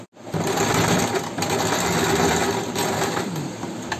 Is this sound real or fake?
real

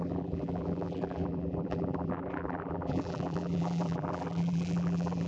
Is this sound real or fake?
fake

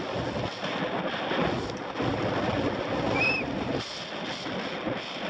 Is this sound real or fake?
real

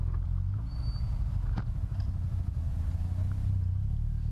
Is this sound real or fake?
real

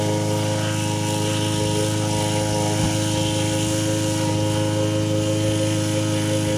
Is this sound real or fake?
real